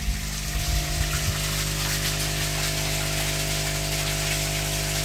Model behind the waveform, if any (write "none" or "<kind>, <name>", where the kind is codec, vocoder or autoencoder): none